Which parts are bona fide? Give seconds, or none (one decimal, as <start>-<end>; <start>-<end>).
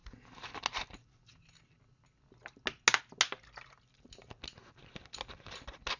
0.0-6.0